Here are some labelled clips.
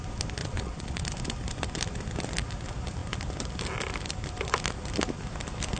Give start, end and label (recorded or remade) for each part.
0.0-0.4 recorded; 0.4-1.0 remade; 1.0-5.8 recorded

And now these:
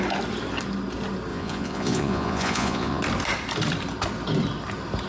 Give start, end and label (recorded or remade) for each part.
0.0-1.3 recorded; 1.3-3.0 remade; 3.0-5.1 recorded

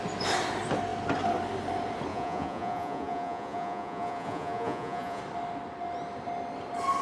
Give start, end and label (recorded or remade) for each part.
0.0-2.1 recorded; 2.1-5.2 remade; 5.2-7.0 recorded

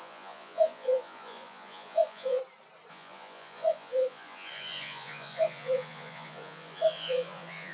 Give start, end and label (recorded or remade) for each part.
0.0-2.4 remade; 2.4-2.9 recorded; 2.9-7.7 remade

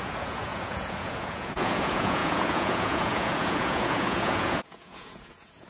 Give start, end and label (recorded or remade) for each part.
0.0-5.7 remade